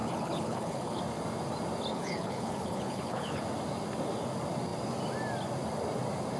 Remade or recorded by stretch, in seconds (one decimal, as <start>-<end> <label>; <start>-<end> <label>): 0.0-1.0 remade; 1.0-1.9 recorded; 1.9-3.4 remade; 3.4-6.4 recorded